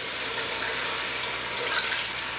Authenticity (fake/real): real